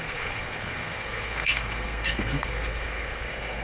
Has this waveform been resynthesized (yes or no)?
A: yes